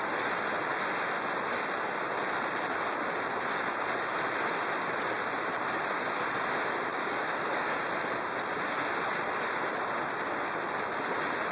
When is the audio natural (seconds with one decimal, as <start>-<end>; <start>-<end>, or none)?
0.0-6.9; 7.8-11.5